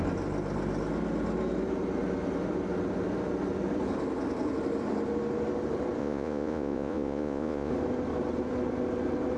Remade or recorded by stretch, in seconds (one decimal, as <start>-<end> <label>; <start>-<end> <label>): 0.0-6.0 recorded; 6.0-7.7 remade; 7.7-9.4 recorded